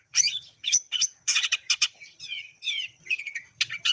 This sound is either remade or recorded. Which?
remade